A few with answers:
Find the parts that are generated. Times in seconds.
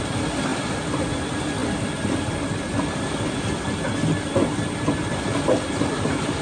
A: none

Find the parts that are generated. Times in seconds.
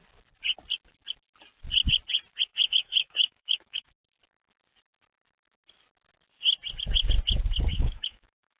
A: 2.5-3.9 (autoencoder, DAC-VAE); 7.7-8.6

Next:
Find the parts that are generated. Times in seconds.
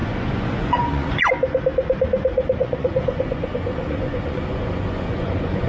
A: 0.0-1.1 (vocoder, Vocos); 2.3-5.7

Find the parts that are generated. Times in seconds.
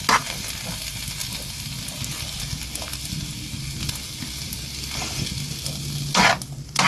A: none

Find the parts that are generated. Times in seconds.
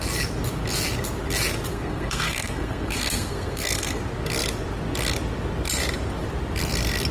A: 1.7-4.0 (codec, SNAC)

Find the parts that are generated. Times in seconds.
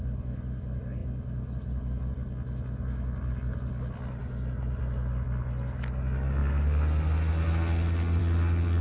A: none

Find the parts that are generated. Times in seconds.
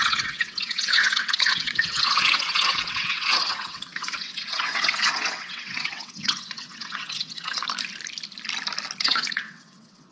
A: 0.0-7.6 (vocoder, WaveNeXt); 9.0-10.1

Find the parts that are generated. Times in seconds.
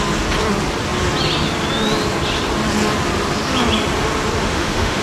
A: 4.4-5.0 (autoencoder, DAC-VAE)